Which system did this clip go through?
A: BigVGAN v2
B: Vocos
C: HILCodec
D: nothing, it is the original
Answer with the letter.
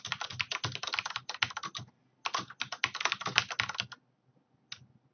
D